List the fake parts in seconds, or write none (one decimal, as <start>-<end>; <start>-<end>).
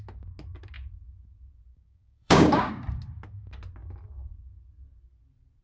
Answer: 1.7-2.7